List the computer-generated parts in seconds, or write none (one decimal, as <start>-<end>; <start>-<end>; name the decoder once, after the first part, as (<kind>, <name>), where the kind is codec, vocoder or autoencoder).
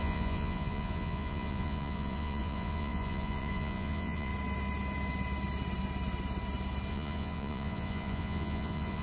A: 0.0-4.3 (vocoder, Vocos); 6.9-9.0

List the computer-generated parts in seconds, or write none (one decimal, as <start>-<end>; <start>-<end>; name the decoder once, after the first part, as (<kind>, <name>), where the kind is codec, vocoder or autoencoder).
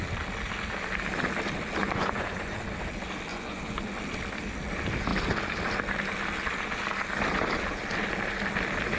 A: 1.8-2.6 (vocoder, Vocos); 3.3-3.8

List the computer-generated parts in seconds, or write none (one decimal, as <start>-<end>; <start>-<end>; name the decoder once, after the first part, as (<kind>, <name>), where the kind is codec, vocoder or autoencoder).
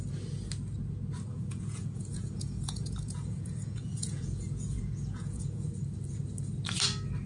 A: 1.3-5.7 (vocoder, Vocos)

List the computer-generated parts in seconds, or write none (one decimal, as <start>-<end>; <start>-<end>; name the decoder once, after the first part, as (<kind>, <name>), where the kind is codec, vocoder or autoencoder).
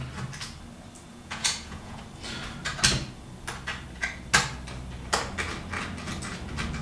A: 1.1-2.0 (vocoder, Vocos)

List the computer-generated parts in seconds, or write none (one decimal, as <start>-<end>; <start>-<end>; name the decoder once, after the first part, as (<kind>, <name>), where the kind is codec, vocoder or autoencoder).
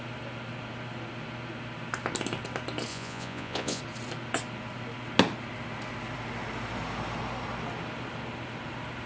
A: 2.9-3.8 (vocoder, Vocos)